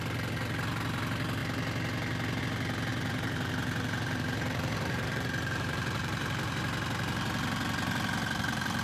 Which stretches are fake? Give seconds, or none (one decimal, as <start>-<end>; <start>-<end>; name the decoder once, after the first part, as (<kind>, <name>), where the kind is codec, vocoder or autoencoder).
2.9-6.6 (vocoder, BigVGAN v2)